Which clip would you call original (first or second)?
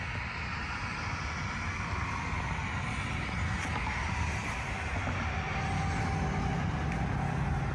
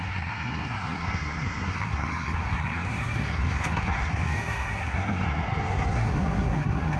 first